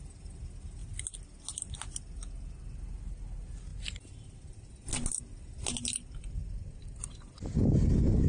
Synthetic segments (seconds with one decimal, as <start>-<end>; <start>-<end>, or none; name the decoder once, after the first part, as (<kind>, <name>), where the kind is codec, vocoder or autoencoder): none